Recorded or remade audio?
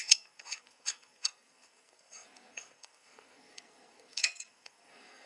remade